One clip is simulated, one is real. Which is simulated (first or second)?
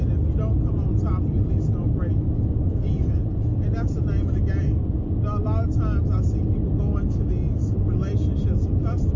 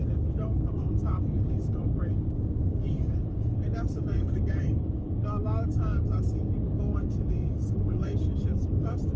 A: second